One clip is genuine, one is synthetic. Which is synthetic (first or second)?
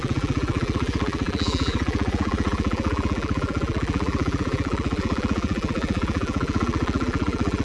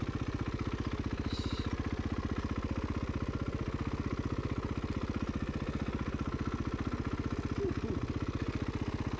first